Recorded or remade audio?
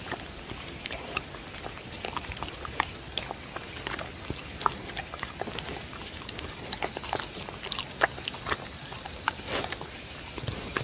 recorded